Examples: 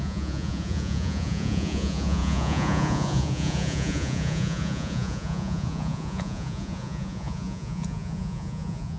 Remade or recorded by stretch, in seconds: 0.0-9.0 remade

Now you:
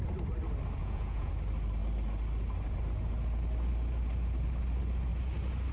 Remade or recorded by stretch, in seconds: 0.0-0.8 recorded; 0.8-1.3 remade; 1.3-5.7 recorded

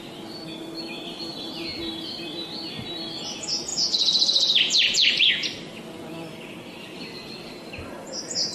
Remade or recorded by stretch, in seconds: 0.0-3.7 recorded; 3.7-5.3 remade; 5.3-8.5 recorded

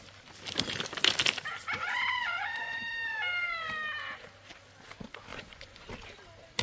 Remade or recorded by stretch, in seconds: 0.0-1.6 recorded; 1.6-2.8 remade; 2.8-5.3 recorded; 5.3-5.9 remade; 5.9-6.6 recorded

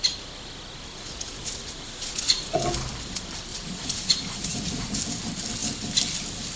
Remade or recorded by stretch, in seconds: 0.0-0.9 recorded; 0.9-2.6 remade; 2.6-3.5 recorded; 3.5-5.0 remade; 5.0-6.6 recorded

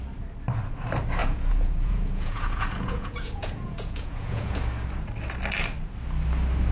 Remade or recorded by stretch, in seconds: 0.0-1.2 recorded; 1.2-4.6 remade; 4.6-6.7 recorded

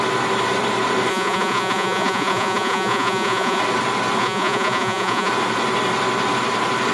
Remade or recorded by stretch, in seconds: 0.0-1.1 recorded; 1.1-3.6 remade; 3.6-4.2 recorded; 4.2-5.3 remade; 5.3-6.9 recorded

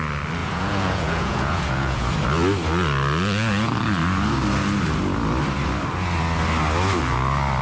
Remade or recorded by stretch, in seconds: 0.0-0.4 recorded; 0.4-2.1 remade; 2.1-7.6 recorded